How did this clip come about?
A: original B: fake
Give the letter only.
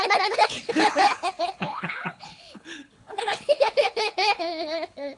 B